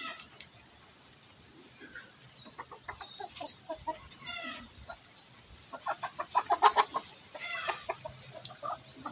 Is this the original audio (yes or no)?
yes